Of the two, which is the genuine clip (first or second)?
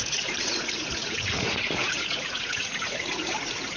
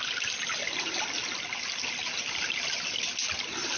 second